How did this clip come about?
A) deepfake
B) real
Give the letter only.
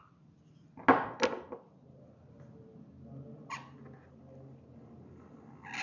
B